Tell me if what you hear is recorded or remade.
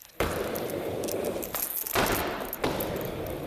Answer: recorded